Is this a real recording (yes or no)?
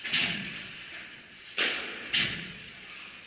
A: no